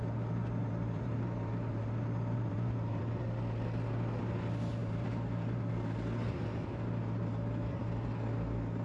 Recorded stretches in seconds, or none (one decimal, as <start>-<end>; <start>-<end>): 0.0-0.6; 3.0-4.8; 5.7-8.8